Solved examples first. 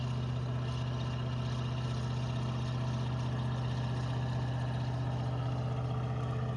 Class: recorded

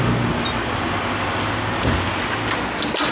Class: recorded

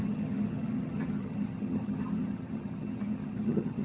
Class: remade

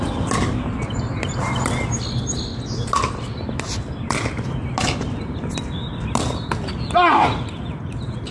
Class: recorded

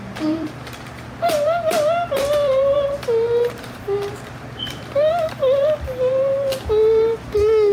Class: remade